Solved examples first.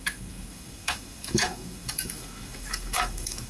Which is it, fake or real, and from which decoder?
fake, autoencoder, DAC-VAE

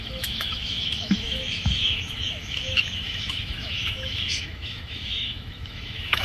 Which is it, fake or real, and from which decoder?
fake, autoencoder, DAC-VAE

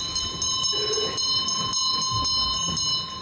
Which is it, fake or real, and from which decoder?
real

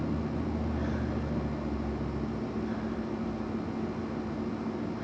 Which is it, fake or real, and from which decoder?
real